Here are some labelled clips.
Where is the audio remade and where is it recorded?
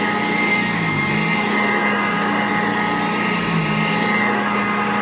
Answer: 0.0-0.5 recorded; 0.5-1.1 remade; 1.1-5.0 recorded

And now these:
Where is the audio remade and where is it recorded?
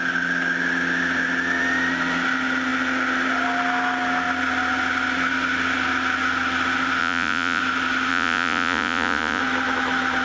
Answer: 0.0-7.0 recorded; 7.0-7.6 remade; 7.6-8.1 recorded; 8.1-9.4 remade; 9.4-10.2 recorded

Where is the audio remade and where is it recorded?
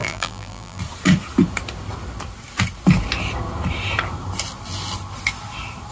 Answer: 0.0-0.8 remade; 0.8-5.9 recorded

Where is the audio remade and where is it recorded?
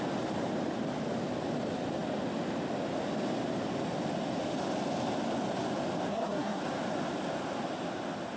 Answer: 0.0-6.1 recorded; 6.1-6.6 remade; 6.6-8.4 recorded